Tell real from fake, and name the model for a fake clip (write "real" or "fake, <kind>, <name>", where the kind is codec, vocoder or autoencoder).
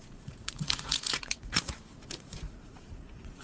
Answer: fake, vocoder, Vocos